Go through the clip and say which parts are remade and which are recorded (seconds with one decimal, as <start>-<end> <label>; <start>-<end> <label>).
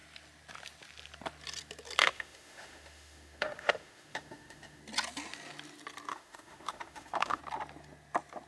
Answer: 0.0-2.0 recorded; 2.0-4.8 remade; 4.8-6.1 recorded; 6.1-7.4 remade; 7.4-8.5 recorded